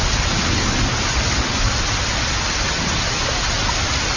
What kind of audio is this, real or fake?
real